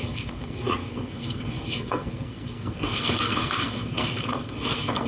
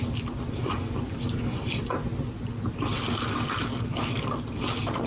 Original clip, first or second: second